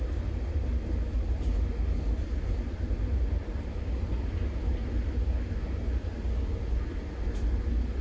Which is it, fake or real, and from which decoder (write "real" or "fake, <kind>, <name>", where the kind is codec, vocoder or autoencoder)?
real